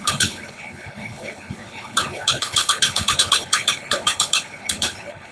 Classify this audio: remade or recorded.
remade